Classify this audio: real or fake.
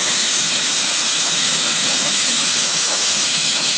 fake